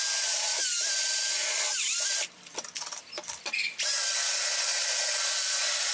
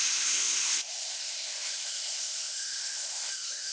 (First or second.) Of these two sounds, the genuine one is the first